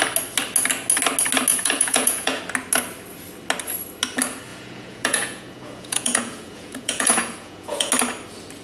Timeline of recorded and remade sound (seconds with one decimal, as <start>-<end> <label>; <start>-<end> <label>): 0.0-1.5 recorded; 1.5-2.4 remade; 2.4-4.5 recorded; 4.5-7.9 remade; 7.9-8.6 recorded